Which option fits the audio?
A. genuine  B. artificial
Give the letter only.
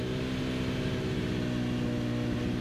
A